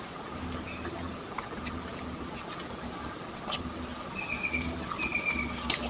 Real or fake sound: real